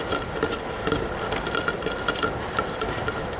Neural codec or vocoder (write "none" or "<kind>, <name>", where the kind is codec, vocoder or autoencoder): none